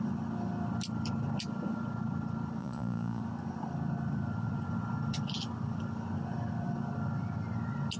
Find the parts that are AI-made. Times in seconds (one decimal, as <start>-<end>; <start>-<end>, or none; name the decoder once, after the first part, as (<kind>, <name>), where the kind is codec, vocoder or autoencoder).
2.6-3.2 (vocoder, Vocos)